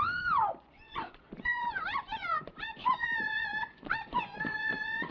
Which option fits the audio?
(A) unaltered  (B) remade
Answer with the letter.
B